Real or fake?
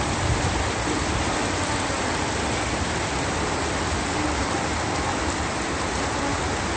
real